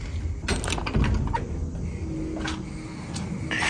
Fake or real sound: real